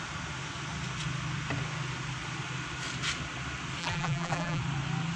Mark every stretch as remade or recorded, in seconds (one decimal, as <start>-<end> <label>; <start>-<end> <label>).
0.0-3.8 recorded; 3.8-4.6 remade; 4.6-5.2 recorded